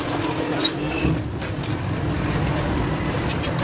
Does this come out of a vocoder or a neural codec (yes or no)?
no